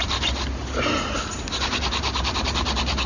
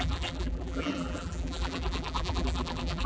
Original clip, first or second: first